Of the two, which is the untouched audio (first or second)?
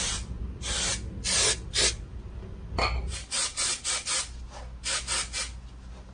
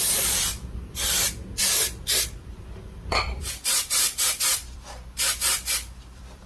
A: first